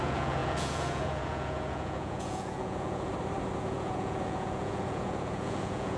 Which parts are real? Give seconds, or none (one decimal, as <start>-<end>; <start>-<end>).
3.1-3.6